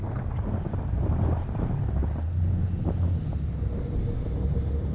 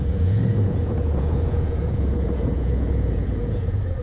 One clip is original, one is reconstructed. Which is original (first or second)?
first